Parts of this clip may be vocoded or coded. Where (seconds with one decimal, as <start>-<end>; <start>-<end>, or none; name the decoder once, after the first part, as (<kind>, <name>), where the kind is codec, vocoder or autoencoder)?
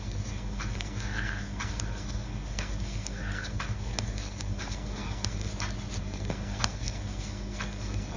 0.0-5.5 (codec, SNAC); 6.0-8.2